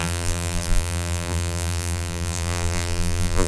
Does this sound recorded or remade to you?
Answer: remade